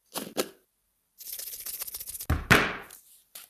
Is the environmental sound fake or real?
real